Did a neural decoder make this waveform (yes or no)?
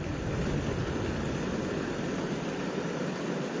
no